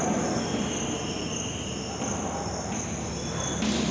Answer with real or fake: real